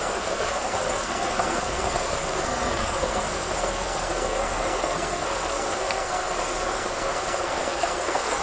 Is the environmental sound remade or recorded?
remade